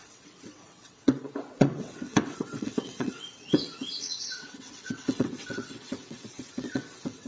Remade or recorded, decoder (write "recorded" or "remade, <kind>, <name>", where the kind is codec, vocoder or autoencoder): remade, vocoder, WaveNeXt